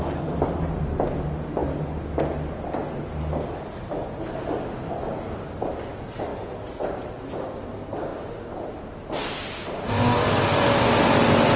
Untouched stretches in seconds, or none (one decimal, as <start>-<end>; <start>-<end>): 0.0-11.6